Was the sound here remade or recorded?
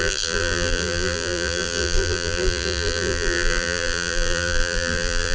remade